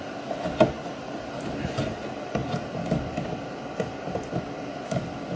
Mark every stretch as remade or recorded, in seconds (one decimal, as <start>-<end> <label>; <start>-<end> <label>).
0.0-5.4 recorded